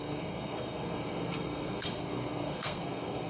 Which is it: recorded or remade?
remade